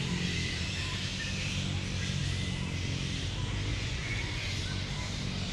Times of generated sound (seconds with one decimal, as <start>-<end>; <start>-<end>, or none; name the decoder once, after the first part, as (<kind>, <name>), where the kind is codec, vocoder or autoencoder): 3.7-4.6 (vocoder, Vocos)